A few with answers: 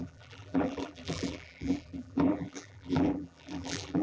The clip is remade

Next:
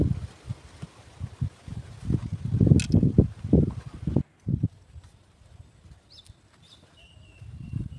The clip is recorded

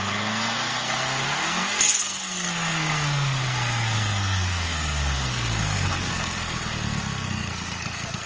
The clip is remade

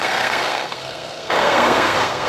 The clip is remade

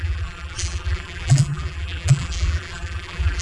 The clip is remade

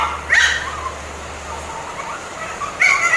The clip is recorded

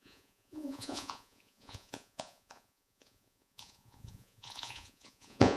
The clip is remade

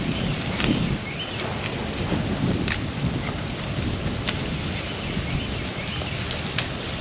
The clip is recorded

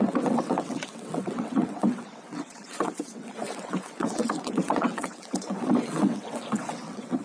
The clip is remade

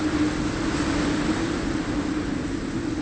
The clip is recorded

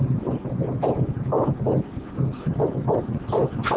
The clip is recorded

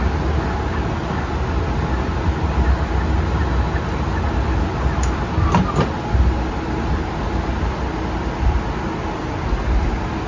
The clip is recorded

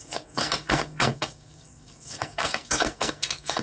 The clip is remade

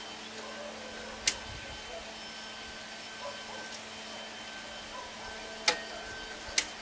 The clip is recorded